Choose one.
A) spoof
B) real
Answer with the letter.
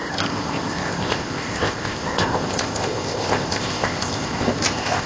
A